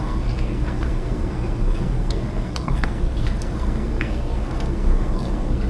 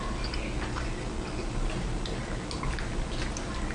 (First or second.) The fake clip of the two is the first